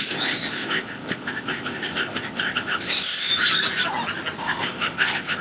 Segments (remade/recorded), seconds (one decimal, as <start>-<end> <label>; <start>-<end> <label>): 0.0-3.3 remade; 3.3-4.4 recorded; 4.4-5.4 remade